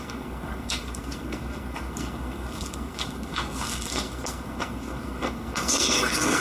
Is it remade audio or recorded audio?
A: remade